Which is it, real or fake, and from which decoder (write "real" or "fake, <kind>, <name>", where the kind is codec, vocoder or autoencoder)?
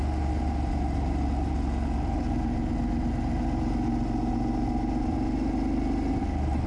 real